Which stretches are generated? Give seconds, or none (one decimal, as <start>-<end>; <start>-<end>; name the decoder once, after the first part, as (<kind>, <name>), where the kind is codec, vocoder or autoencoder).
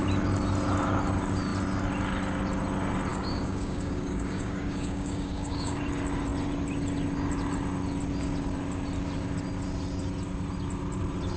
3.1-5.8 (codec, DAC)